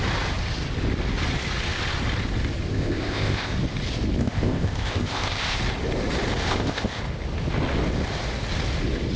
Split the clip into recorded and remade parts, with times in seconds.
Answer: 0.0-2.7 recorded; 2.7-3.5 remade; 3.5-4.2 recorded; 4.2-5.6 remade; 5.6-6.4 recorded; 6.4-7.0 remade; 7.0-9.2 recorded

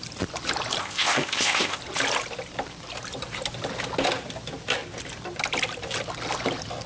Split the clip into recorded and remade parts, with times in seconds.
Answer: 0.0-0.8 recorded; 0.8-1.8 remade; 1.8-6.9 recorded